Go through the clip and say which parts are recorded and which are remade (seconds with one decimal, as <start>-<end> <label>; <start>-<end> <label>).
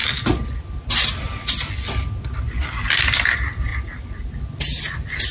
0.0-5.3 recorded